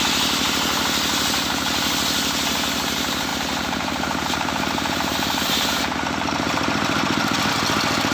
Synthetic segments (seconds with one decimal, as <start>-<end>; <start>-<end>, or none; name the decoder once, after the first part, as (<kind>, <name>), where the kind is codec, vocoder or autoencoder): 3.3-7.5 (vocoder, BigVGAN v2)